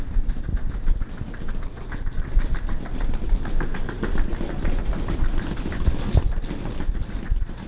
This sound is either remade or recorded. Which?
recorded